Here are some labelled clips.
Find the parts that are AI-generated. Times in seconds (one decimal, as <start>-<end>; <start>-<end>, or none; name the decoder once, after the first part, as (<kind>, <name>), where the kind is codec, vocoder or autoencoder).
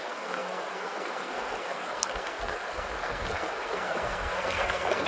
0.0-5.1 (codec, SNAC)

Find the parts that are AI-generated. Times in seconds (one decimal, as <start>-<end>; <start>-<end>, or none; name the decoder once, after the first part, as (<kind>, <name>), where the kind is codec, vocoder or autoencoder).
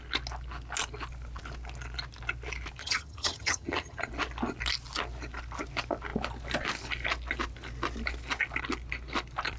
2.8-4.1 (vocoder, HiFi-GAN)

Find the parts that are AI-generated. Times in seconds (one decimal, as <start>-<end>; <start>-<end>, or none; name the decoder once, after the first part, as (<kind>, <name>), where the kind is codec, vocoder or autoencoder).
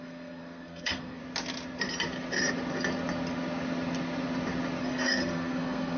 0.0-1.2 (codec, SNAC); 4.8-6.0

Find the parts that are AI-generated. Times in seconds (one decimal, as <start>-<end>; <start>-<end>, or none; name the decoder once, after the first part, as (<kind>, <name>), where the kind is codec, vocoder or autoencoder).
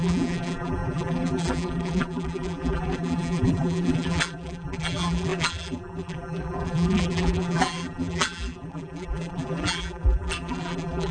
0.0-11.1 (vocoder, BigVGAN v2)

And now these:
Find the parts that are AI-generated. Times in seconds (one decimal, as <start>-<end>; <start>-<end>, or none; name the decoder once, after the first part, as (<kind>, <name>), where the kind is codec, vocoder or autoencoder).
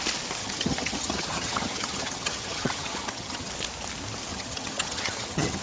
0.4-3.5 (vocoder, HiFi-GAN); 4.3-5.6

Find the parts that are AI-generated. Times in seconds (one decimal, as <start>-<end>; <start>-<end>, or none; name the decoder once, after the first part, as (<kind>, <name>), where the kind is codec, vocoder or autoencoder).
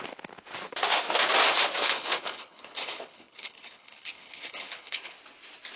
1.8-5.1 (codec, HILCodec)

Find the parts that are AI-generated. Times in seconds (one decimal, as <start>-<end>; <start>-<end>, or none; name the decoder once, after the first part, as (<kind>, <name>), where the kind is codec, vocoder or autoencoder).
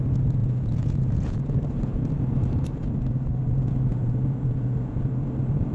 0.4-1.4 (vocoder, Vocos); 3.9-5.0